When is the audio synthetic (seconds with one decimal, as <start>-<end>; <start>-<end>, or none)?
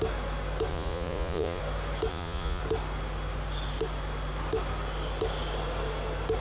0.7-1.6; 2.1-2.6